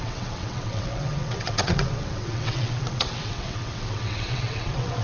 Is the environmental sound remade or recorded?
remade